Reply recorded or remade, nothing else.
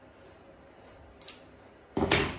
recorded